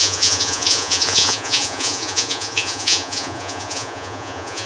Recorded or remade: remade